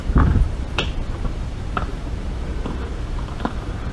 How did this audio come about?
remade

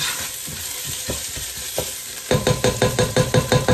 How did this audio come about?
remade